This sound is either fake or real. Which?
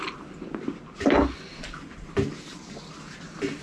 real